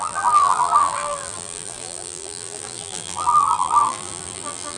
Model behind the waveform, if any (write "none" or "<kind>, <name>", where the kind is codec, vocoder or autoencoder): vocoder, BigVGAN v2